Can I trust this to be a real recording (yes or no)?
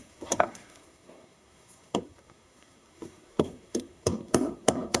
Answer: no